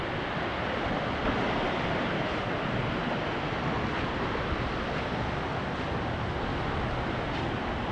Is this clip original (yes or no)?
yes